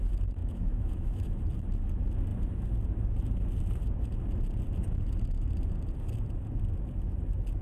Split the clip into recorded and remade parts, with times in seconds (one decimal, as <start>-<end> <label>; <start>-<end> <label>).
0.0-0.4 recorded; 0.4-1.3 remade; 1.3-7.6 recorded